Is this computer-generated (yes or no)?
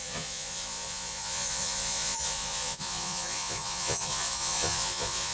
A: yes